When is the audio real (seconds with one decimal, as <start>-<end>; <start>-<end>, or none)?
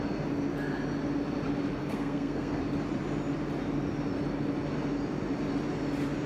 0.0-1.8; 2.6-6.3